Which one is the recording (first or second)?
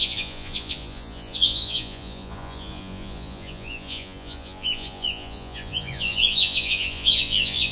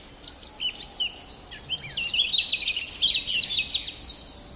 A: second